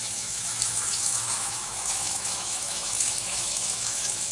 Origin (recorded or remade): remade